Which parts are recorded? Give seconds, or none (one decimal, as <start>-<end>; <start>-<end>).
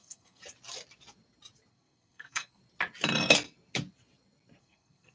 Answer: 0.4-1.7; 2.6-4.6